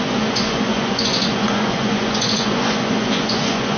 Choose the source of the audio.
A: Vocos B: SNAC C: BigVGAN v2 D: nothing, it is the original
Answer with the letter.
A